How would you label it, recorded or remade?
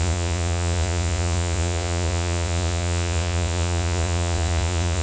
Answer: remade